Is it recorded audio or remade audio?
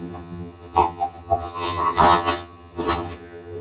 remade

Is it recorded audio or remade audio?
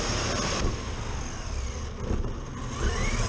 recorded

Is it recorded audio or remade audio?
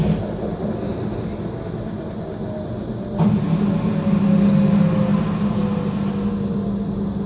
recorded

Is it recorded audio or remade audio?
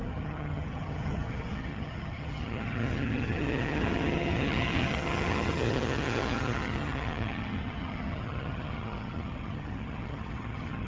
remade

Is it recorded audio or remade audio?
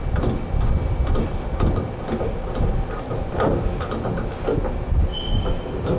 recorded